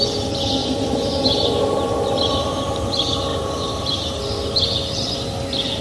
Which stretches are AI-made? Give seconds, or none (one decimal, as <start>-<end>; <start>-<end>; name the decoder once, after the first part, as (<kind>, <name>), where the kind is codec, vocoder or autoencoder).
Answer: 0.6-2.9 (vocoder, BigVGAN v2); 3.3-4.2